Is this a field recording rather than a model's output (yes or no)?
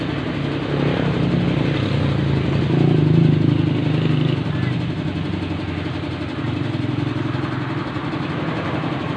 yes